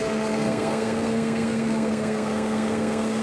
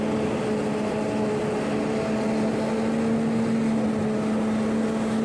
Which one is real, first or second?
second